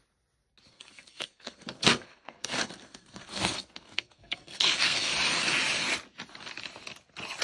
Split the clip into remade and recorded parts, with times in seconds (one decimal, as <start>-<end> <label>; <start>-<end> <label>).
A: 0.0-0.7 recorded; 0.7-5.1 remade; 5.1-7.4 recorded